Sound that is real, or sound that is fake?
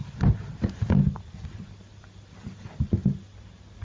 real